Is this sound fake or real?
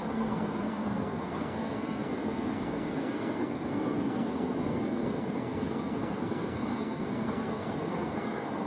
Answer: fake